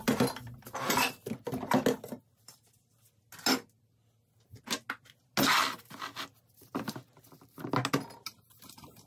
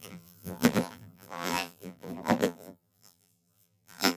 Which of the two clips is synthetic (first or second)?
second